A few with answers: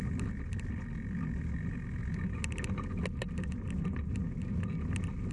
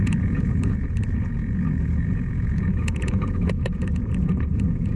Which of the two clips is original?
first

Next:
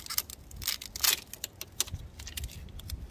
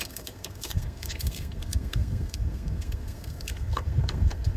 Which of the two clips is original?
first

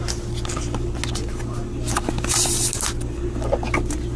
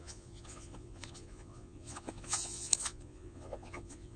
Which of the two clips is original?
first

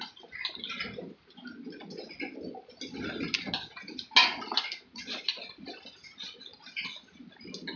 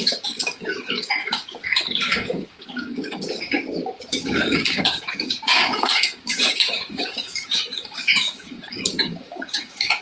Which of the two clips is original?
first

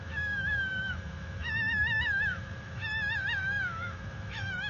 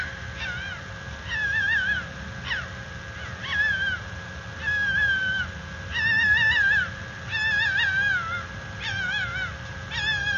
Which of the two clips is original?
second